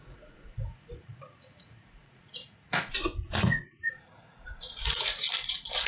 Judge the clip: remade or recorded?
remade